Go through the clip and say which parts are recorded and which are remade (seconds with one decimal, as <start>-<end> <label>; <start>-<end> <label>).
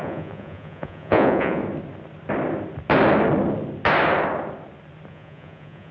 0.0-1.6 remade; 1.6-5.1 recorded; 5.1-5.9 remade